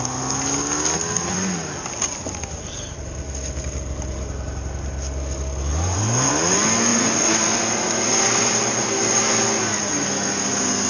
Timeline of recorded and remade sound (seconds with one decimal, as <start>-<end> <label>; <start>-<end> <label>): 0.0-5.7 recorded; 5.7-6.3 remade; 6.3-6.9 recorded; 6.9-9.4 remade; 9.4-10.9 recorded